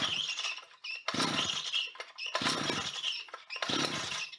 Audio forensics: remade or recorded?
recorded